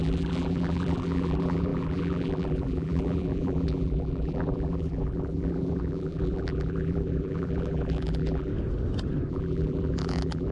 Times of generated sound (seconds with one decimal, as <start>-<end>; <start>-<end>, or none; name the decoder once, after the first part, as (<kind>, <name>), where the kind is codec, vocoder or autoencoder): 0.0-8.5 (vocoder, BigVGAN v2); 9.3-10.5